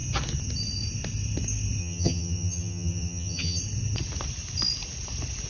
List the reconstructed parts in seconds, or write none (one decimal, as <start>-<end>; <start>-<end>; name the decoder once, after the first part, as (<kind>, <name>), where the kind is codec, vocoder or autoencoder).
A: 1.8-3.6 (vocoder, HiFi-GAN)